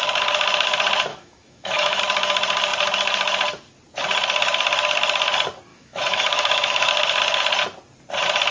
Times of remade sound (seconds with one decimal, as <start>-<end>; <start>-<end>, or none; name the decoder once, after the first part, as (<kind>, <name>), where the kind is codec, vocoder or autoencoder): 1.1-2.0 (autoencoder, DAC-VAE); 5.7-6.9

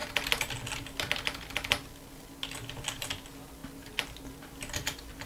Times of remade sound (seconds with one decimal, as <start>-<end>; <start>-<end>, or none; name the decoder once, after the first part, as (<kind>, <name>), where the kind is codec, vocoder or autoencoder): none

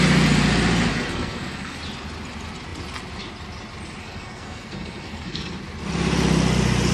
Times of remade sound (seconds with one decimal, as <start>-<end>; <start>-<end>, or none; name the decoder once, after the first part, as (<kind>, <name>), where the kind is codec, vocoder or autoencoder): 0.9-1.8 (codec, SNAC); 4.0-5.6

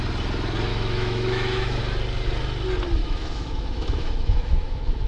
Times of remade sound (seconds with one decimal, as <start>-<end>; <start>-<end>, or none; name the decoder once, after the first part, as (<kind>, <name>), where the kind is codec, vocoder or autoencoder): 0.7-1.8 (autoencoder, DAC-VAE); 3.0-5.1

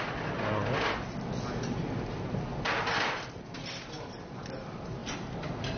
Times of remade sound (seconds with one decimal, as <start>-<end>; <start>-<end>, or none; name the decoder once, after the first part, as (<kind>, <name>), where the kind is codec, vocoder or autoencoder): none

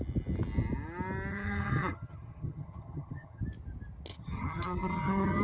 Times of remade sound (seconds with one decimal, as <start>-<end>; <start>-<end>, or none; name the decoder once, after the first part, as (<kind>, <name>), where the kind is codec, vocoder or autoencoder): 1.3-3.4 (vocoder, HiFi-GAN); 4.1-5.4

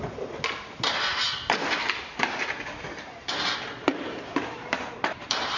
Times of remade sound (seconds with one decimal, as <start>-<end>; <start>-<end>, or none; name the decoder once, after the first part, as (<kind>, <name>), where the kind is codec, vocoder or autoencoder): 3.9-5.6 (vocoder, BigVGAN v2)